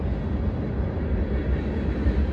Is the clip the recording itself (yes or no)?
yes